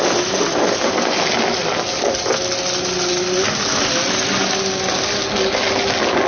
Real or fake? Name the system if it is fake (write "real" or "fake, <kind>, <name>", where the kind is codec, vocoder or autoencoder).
real